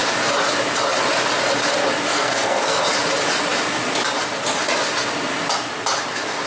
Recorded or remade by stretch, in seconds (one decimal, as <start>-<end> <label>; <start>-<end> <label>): 0.0-2.1 recorded; 2.1-2.8 remade; 2.8-6.5 recorded